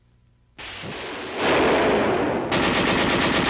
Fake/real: real